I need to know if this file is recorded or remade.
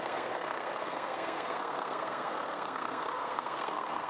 remade